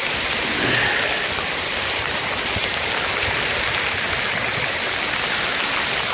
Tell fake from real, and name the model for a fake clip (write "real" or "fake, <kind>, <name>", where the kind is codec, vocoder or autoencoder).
real